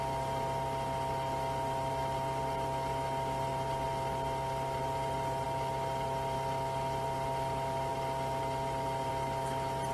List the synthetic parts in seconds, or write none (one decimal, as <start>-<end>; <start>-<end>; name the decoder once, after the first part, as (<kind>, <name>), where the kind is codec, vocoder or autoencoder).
none

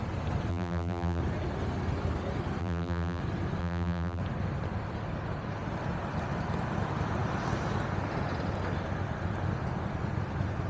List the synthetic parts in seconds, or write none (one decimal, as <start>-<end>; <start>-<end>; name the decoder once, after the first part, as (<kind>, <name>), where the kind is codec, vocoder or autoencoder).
0.5-1.2 (vocoder, BigVGAN v2); 2.6-3.2; 3.6-4.2

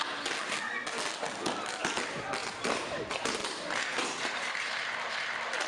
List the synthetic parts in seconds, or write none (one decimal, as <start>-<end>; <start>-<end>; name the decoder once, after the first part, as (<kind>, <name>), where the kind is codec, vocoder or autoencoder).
2.4-5.1 (vocoder, BigVGAN v2)

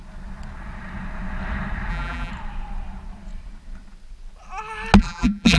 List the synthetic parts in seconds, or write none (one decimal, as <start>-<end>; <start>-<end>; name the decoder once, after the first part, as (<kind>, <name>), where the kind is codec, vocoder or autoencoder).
1.9-2.3 (vocoder, BigVGAN v2); 5.0-5.6

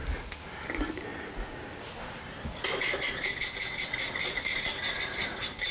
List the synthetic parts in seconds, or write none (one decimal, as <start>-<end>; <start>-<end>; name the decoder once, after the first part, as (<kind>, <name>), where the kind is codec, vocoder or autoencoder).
0.7-1.1 (vocoder, BigVGAN v2); 4.4-5.7

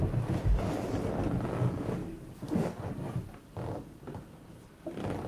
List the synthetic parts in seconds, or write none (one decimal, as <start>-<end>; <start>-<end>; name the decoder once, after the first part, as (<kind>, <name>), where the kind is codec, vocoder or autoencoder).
2.0-5.3 (vocoder, BigVGAN v2)